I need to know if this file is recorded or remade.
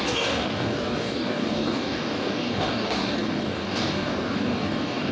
remade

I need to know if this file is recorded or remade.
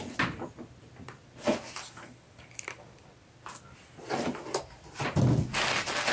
recorded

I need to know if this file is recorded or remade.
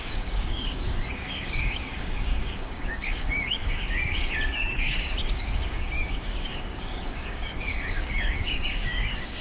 remade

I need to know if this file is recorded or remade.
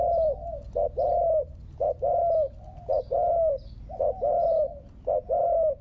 recorded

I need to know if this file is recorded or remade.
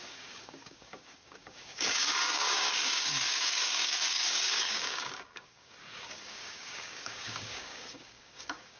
remade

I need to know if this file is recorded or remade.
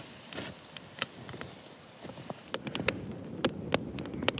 recorded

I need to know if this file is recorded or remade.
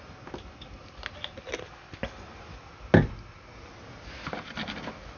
recorded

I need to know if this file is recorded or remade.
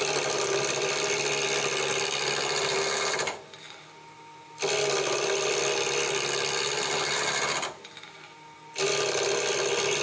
recorded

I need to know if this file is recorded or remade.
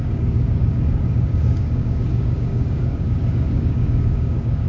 remade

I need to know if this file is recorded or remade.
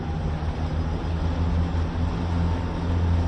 recorded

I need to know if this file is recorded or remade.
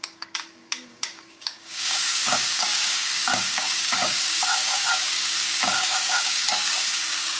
remade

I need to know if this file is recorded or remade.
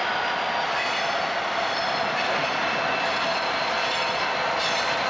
recorded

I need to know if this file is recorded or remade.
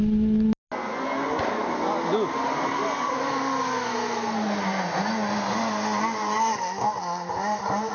recorded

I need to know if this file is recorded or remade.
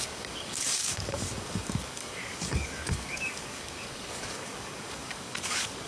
remade